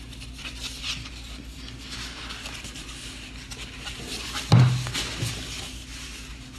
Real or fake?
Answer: real